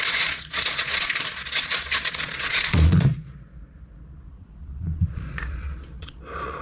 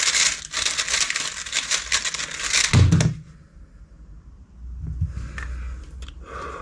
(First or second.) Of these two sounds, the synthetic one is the first